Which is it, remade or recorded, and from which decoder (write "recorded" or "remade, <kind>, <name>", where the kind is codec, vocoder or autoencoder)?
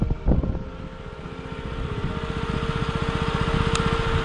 recorded